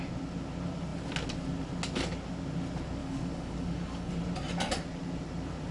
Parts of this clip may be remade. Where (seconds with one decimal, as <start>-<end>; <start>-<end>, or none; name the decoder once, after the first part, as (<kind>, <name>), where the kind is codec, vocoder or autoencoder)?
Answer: 3.0-4.1 (codec, DAC)